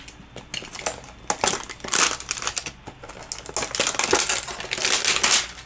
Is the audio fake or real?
real